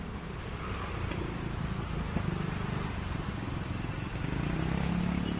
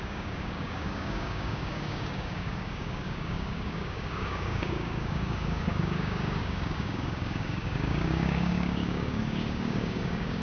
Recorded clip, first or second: first